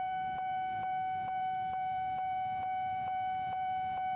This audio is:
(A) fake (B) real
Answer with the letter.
A